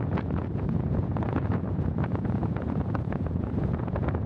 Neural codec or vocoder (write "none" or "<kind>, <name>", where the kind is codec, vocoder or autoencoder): vocoder, Vocos